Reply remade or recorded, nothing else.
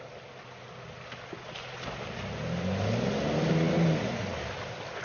recorded